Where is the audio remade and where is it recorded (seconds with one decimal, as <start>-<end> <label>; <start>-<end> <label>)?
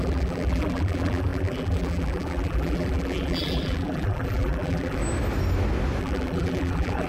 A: 0.0-5.0 remade; 5.0-6.0 recorded; 6.0-7.1 remade